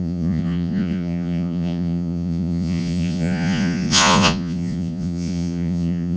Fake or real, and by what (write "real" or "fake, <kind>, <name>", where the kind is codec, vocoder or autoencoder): fake, vocoder, Vocos